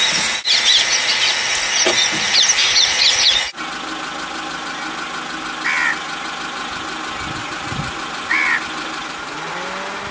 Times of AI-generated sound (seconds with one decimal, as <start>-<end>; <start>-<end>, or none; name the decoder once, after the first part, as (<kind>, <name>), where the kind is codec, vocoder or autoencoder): 2.6-3.6 (vocoder, Vocos); 7.4-8.0